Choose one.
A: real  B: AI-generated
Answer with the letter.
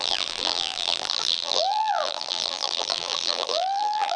B